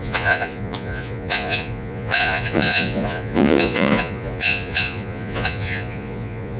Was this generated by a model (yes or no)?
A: yes